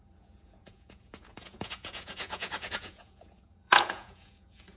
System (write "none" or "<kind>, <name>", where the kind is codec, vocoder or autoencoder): vocoder, Vocos